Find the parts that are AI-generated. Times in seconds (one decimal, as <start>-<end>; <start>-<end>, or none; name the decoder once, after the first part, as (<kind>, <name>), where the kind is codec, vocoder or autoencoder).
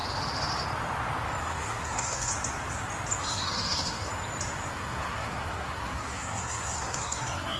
1.4-2.3 (codec, SNAC); 3.2-4.1; 4.7-7.6